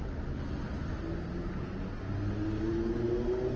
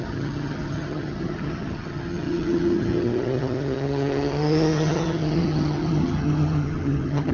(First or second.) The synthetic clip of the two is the second